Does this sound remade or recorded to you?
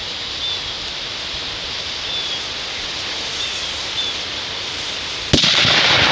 recorded